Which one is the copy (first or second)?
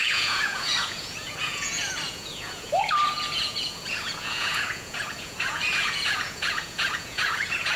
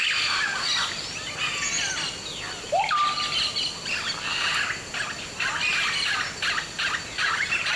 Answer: first